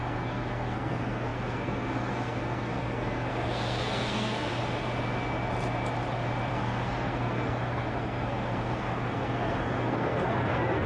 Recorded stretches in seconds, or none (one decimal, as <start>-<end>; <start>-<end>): 4.5-6.5

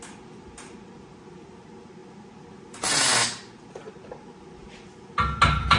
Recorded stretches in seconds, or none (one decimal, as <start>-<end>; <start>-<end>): 0.0-5.8

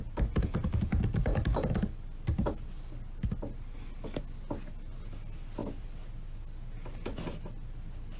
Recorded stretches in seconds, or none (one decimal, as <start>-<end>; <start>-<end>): 0.0-8.2

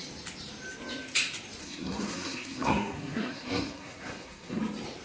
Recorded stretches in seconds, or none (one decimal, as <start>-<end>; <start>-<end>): 0.0-1.6; 4.6-5.0

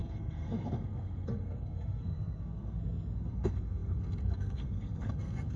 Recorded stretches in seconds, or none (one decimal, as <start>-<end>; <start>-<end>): none